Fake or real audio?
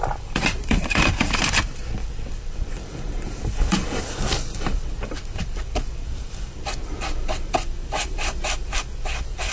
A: fake